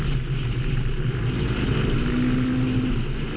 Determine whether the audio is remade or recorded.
recorded